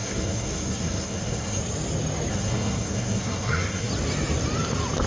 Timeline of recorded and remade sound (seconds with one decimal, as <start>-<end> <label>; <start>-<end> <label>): 0.0-1.6 remade; 1.6-2.3 recorded; 2.3-3.9 remade; 3.9-5.1 recorded